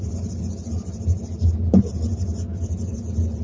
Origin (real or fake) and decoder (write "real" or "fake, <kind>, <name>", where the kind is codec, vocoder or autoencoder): real